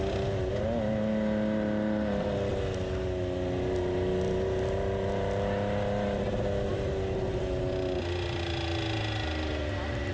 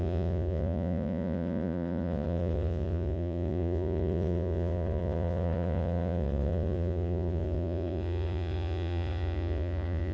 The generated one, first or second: second